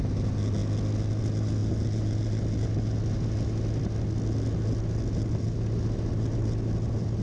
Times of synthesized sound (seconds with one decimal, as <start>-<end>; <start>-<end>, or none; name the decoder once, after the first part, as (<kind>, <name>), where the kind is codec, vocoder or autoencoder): none